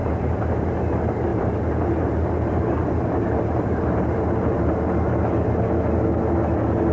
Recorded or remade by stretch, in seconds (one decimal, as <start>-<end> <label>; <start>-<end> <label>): 0.0-0.5 remade; 0.5-1.3 recorded; 1.3-4.9 remade; 4.9-6.9 recorded